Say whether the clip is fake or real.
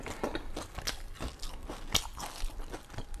real